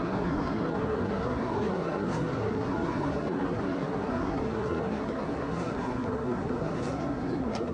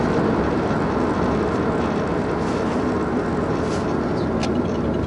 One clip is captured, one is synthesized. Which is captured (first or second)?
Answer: second